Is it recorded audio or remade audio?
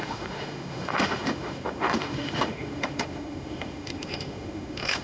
remade